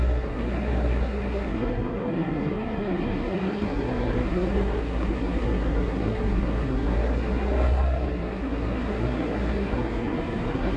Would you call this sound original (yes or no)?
no